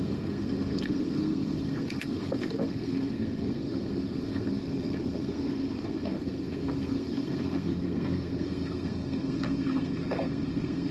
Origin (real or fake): fake